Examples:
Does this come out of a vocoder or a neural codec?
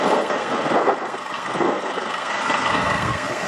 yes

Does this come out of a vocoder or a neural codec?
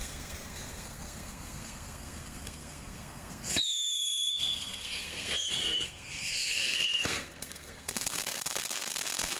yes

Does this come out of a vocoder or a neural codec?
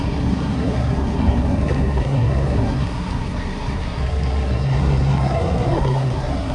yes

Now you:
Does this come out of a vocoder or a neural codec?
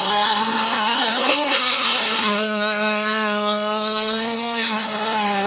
yes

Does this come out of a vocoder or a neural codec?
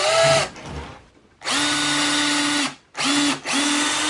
no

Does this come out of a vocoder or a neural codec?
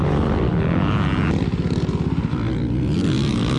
no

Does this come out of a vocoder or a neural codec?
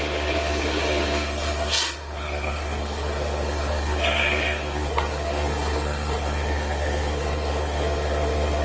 yes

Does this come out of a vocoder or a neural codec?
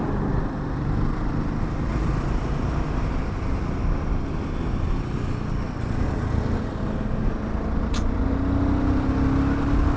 no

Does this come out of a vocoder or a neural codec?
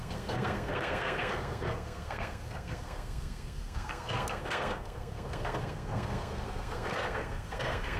yes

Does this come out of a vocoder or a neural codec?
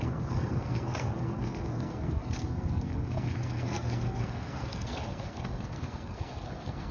yes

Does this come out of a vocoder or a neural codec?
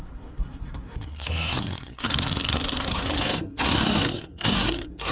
yes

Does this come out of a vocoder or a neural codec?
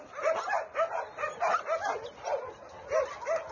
no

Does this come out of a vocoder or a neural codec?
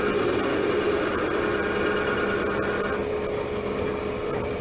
no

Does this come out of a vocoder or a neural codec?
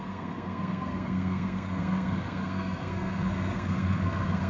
yes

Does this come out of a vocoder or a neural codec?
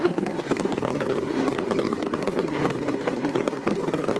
yes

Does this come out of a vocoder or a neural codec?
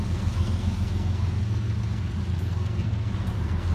yes